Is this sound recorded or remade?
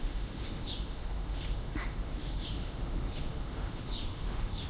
remade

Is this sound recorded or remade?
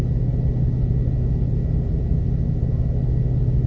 recorded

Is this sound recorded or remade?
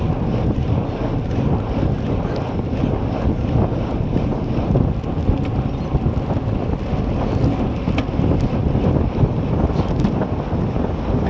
recorded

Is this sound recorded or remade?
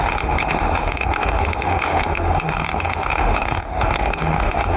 remade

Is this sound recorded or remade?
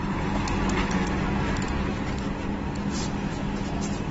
recorded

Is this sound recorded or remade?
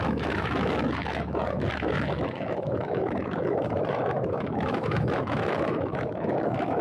remade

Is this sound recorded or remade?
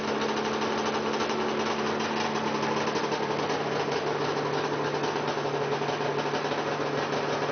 recorded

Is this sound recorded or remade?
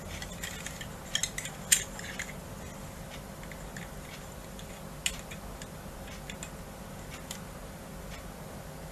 recorded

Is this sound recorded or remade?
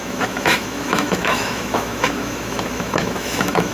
remade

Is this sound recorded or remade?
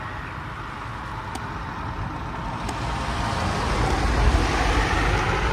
recorded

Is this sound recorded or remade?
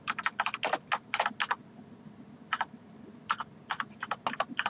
recorded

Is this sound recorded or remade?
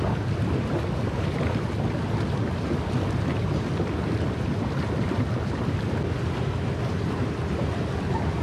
recorded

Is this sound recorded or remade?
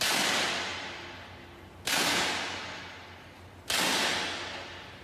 recorded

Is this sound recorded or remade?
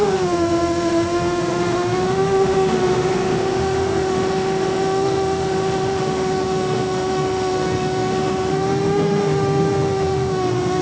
remade